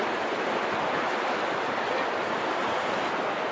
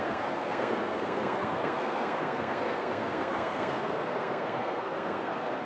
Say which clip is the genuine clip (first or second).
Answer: first